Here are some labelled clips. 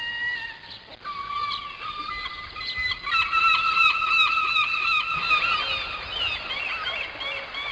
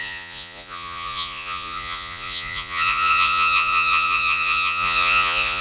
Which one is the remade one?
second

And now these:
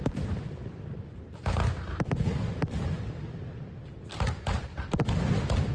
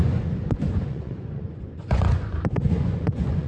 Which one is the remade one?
second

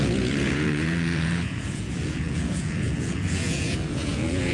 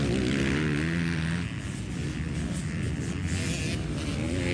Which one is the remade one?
first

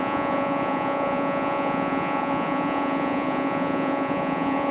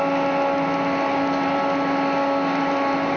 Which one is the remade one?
first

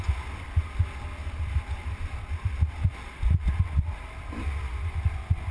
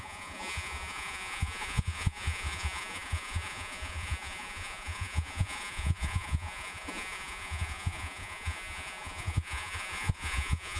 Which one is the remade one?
second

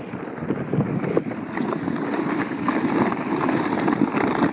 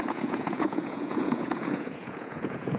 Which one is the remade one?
second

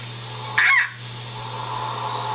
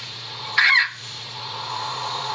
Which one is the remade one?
second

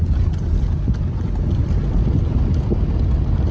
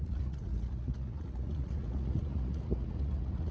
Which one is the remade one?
second